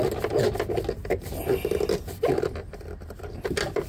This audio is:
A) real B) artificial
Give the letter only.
A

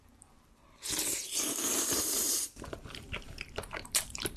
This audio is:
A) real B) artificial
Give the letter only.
B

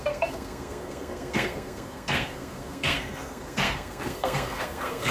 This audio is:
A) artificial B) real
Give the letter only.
A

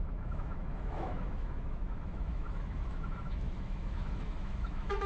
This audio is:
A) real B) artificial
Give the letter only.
B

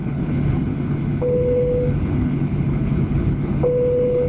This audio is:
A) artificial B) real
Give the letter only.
A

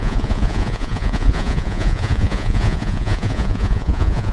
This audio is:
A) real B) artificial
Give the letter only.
B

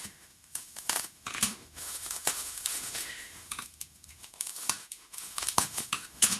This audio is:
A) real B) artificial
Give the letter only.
B